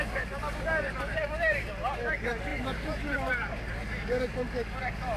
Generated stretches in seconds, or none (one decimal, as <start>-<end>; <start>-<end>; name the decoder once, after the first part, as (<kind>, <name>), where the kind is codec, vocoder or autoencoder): 0.0-5.2 (codec, DAC)